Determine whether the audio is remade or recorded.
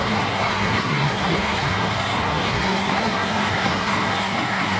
remade